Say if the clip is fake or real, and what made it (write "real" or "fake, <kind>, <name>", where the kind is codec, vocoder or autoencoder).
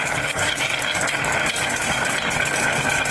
fake, codec, DAC